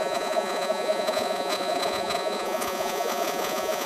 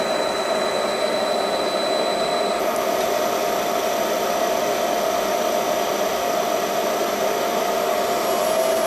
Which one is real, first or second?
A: second